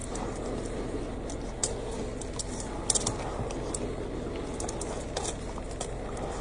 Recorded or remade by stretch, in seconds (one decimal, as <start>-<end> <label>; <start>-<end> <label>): 0.0-1.1 remade; 1.1-6.4 recorded